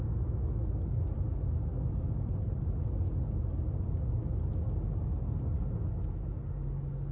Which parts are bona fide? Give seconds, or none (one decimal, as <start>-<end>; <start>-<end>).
0.0-1.7; 2.8-7.1